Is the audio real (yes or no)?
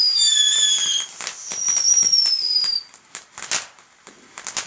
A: yes